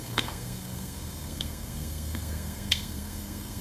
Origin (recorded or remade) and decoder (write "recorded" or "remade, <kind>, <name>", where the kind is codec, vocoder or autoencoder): remade, codec, SNAC